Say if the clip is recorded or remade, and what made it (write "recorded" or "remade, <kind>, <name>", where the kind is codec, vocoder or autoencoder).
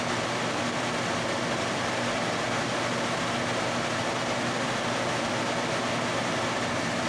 recorded